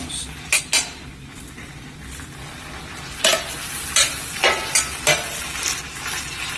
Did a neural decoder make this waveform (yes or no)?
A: no